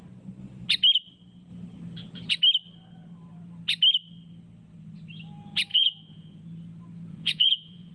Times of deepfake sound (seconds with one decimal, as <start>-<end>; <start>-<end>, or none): 5.7-6.4; 7.1-7.9